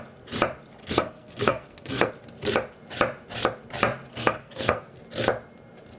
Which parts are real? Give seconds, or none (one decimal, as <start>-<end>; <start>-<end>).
0.0-0.8; 2.1-4.1; 5.0-6.0